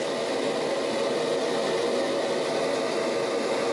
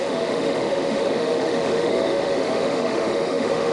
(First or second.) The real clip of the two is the first